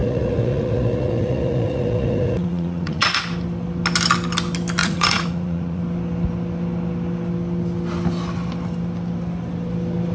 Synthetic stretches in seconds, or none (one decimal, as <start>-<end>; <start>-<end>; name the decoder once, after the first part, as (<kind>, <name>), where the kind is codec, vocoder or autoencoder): 0.0-3.2 (vocoder, Vocos); 4.8-5.8